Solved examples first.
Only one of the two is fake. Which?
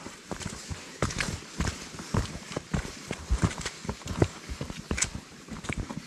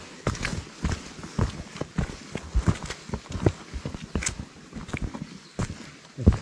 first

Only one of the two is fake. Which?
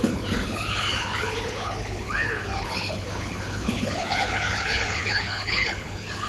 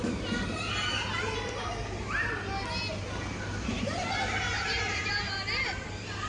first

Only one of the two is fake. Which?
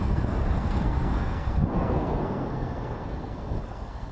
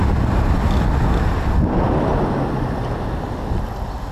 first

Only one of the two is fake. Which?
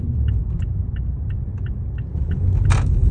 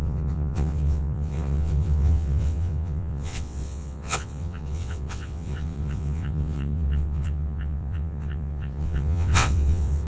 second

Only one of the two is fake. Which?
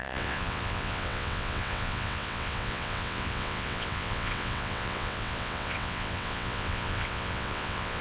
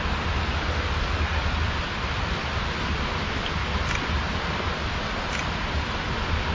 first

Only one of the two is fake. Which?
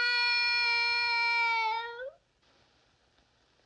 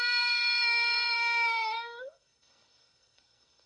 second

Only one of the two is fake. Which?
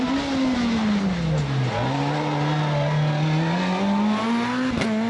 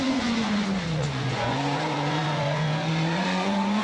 second